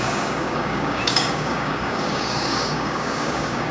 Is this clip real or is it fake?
fake